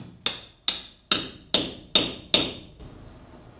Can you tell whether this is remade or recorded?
recorded